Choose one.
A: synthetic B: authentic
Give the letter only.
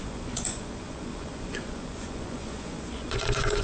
A